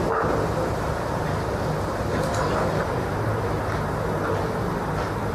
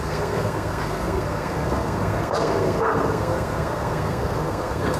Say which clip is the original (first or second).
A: first